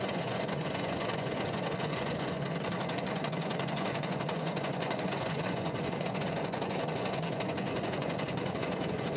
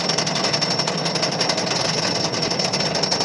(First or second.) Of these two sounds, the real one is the second